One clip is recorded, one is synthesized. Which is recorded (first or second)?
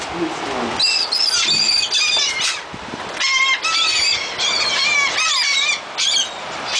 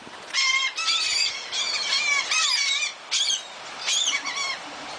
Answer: first